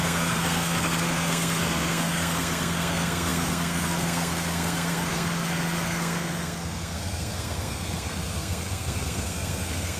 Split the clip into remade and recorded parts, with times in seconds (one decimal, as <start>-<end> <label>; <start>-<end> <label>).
0.0-10.0 remade